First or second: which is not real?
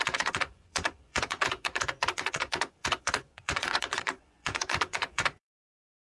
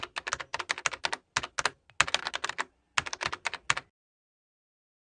first